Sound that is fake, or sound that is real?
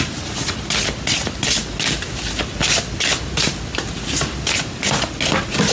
real